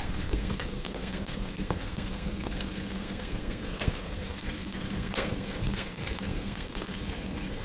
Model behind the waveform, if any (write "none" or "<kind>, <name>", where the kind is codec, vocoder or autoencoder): codec, SNAC